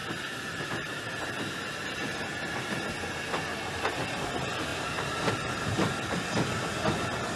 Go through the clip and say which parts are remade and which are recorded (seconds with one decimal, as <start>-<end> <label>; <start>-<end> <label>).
0.0-7.3 recorded